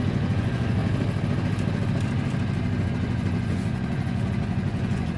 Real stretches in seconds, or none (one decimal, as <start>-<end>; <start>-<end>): 0.8-2.8